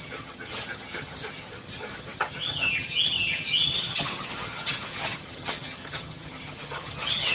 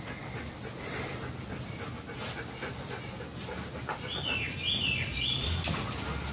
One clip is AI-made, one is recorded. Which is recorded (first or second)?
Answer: second